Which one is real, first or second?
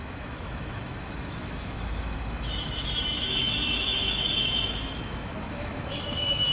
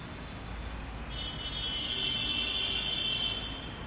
second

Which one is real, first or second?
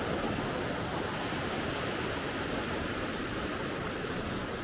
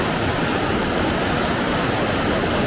second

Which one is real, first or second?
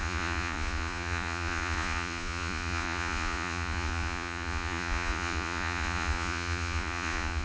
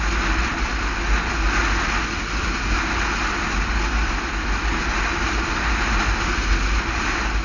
second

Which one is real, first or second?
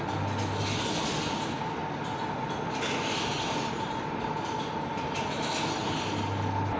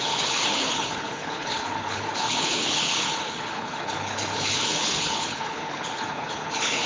first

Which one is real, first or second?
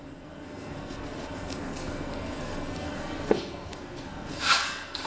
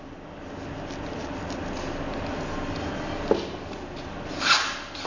second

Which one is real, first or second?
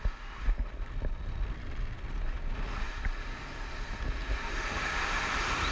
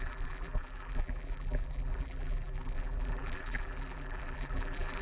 first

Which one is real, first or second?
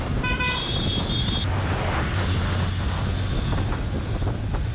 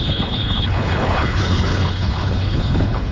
first